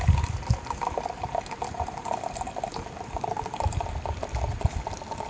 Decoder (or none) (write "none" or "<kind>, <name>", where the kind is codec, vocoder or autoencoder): none